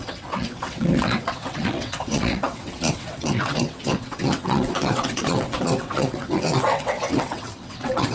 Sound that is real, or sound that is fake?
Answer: fake